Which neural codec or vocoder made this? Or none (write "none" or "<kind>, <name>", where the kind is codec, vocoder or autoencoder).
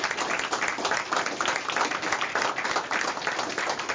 none